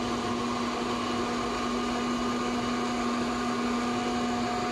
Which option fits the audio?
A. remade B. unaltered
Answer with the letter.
B